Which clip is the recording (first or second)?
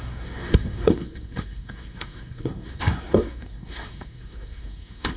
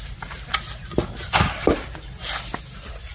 second